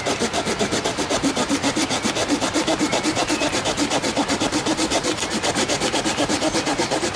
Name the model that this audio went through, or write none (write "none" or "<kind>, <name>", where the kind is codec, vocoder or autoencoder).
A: none